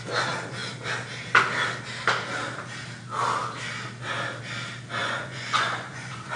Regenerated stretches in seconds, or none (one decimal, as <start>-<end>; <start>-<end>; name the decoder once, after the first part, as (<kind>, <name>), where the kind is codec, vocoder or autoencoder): 5.0-6.4 (vocoder, Vocos)